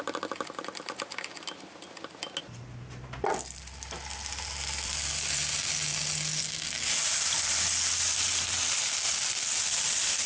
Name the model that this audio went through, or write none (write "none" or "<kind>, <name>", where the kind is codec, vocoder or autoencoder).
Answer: none